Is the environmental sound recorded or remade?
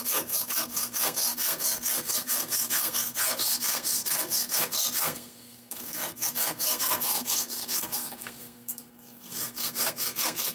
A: remade